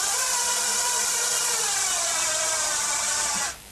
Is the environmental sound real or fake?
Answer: fake